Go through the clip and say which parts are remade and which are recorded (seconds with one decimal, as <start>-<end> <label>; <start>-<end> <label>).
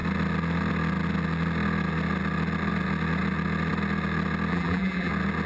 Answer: 0.0-4.5 recorded; 4.5-5.1 remade; 5.1-5.5 recorded